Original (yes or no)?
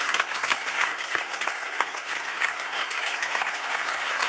no